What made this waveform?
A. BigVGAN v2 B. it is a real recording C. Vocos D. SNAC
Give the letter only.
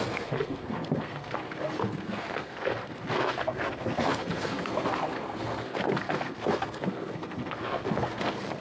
D